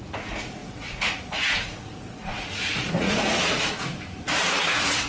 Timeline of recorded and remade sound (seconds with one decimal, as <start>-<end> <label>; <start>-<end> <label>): 0.0-5.1 remade